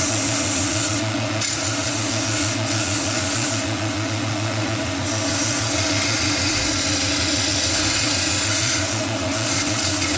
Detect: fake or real fake